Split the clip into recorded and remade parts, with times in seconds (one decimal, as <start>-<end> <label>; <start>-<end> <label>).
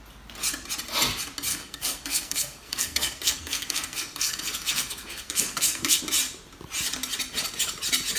0.0-1.5 recorded; 1.5-6.0 remade; 6.0-8.2 recorded